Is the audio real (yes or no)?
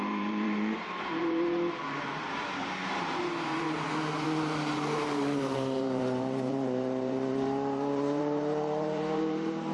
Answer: no